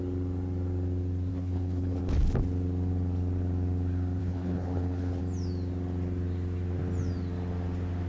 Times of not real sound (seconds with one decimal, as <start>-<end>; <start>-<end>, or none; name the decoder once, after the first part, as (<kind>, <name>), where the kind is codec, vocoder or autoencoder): 1.3-2.0 (codec, HILCodec); 4.2-5.2